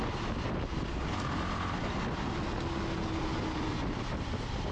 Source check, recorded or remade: recorded